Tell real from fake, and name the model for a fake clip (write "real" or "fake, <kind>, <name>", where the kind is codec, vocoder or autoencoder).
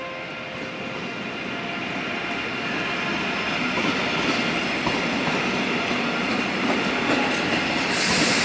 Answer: real